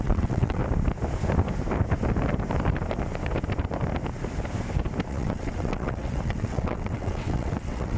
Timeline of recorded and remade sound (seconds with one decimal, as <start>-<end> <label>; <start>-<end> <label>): 0.0-0.6 remade; 0.6-5.1 recorded; 5.1-8.0 remade